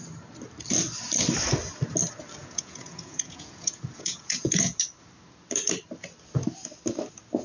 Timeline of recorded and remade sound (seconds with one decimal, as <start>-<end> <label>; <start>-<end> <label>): 0.0-2.4 recorded; 2.4-4.8 remade; 4.8-7.4 recorded